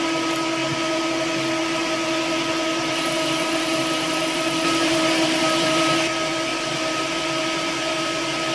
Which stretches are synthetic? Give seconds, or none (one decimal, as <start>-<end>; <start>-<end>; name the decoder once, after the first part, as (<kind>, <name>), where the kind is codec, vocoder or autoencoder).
2.7-5.9 (vocoder, BigVGAN v2); 6.5-7.1